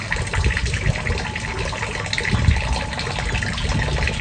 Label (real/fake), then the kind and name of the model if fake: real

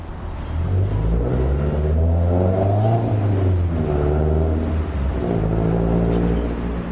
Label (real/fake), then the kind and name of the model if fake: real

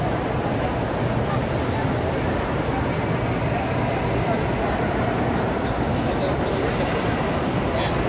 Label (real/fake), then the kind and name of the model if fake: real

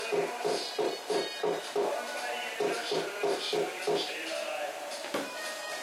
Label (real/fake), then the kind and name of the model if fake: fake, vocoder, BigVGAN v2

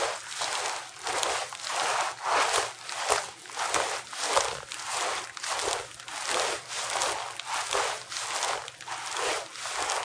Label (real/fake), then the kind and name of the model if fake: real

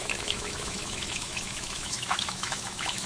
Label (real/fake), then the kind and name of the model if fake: fake, autoencoder, DAC-VAE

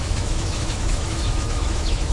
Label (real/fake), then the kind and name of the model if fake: fake, autoencoder, DAC-VAE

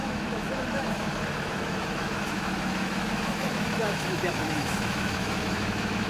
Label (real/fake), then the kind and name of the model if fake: fake, autoencoder, DAC-VAE